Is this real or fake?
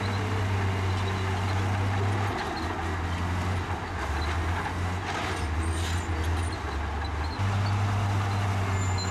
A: real